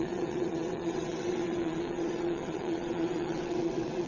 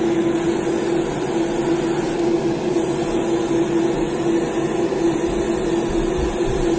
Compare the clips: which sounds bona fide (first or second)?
second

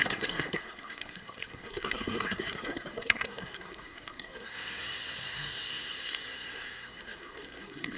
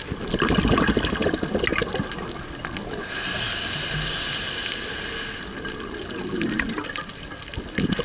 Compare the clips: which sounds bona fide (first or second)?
second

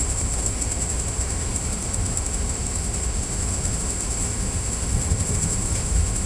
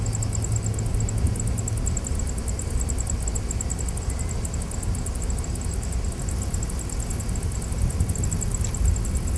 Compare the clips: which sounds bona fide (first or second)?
second